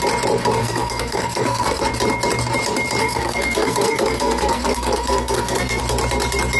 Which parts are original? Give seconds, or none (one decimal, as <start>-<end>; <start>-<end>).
0.0-0.6; 1.8-3.0; 5.8-6.6